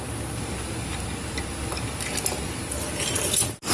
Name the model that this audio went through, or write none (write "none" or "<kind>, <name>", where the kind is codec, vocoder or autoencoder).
none